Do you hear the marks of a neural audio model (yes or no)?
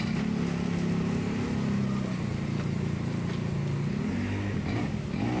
no